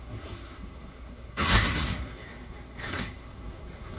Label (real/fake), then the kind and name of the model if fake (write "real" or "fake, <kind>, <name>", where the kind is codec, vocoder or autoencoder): fake, codec, SNAC